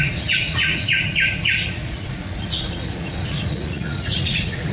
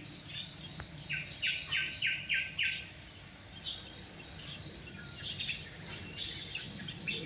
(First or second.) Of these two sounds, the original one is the second